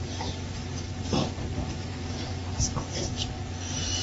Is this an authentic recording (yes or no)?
yes